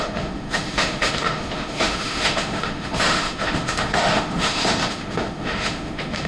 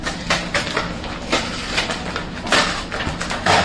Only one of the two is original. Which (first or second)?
second